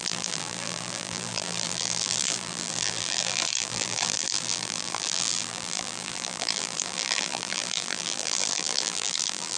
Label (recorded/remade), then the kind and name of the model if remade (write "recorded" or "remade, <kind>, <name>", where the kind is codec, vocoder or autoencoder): remade, vocoder, BigVGAN v2